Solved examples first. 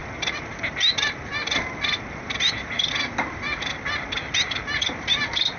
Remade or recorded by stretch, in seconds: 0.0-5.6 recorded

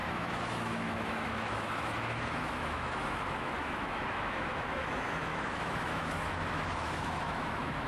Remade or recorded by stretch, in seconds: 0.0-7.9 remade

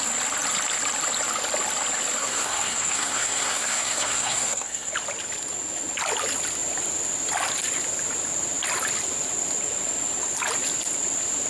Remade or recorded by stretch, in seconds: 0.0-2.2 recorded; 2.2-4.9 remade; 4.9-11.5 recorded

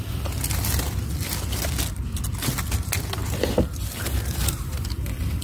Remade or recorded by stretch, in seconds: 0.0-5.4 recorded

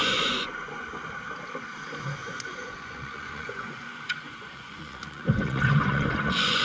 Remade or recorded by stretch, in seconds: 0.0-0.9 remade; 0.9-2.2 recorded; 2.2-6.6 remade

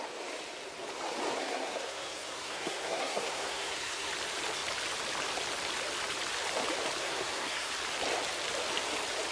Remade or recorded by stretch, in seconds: 0.0-1.4 recorded; 1.4-4.1 remade; 4.1-7.0 recorded; 7.0-7.7 remade; 7.7-9.3 recorded